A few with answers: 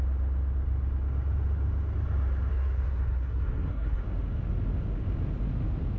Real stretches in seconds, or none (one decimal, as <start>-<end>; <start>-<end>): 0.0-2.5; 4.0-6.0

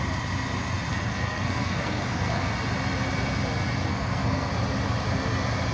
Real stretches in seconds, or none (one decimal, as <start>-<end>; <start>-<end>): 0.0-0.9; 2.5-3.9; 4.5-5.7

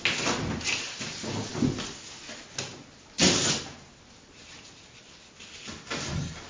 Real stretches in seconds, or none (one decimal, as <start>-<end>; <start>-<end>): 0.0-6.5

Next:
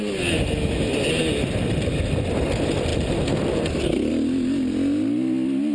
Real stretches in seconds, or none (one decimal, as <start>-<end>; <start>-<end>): 0.0-5.7

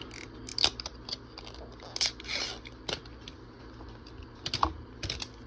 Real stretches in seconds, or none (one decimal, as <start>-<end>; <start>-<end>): 0.0-5.5

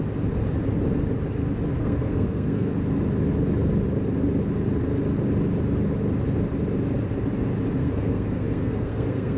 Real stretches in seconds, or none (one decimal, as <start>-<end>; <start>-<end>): 0.0-1.8; 2.7-7.8

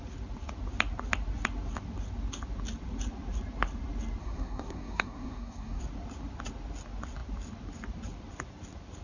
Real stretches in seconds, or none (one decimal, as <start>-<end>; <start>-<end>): 0.0-4.2; 5.8-9.0

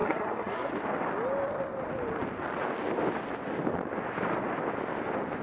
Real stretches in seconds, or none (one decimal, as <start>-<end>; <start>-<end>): 0.7-5.4